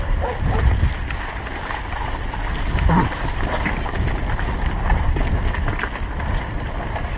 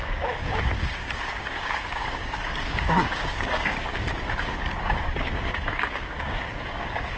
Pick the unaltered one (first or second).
first